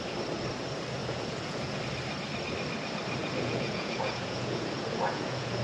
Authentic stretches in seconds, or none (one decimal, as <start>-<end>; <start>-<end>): 0.0-1.0; 1.8-3.2